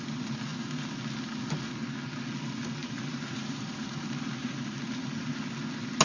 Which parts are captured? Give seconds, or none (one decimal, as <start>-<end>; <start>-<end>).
0.0-2.8; 5.4-6.0